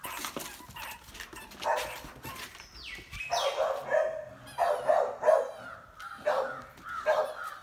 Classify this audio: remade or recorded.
recorded